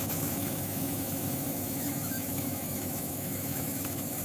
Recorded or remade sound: remade